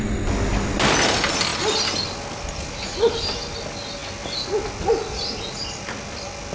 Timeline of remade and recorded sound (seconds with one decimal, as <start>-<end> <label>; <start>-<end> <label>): 0.0-6.5 recorded